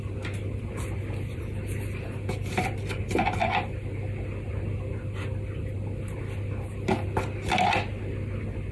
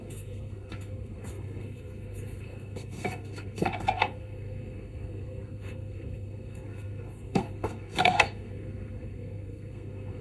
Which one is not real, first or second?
second